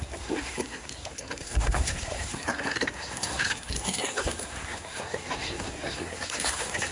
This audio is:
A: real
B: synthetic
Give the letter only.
B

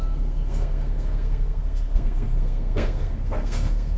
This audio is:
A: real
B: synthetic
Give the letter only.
B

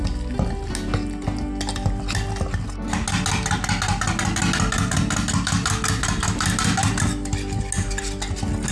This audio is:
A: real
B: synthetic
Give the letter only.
A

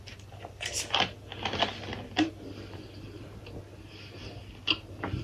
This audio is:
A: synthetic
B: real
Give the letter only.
B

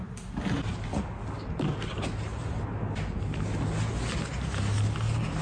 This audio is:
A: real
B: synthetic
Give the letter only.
A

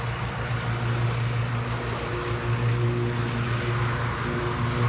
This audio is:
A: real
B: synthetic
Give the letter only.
A